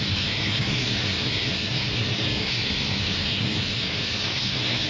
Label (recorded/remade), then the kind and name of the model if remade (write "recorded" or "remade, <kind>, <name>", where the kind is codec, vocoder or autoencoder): remade, codec, SNAC